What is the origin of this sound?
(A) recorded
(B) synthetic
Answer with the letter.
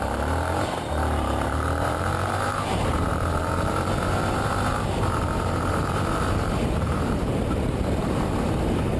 B